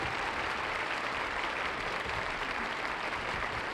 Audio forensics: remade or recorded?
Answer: remade